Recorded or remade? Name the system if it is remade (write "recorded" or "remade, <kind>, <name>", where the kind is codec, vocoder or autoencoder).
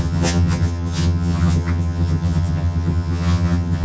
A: remade, vocoder, HiFi-GAN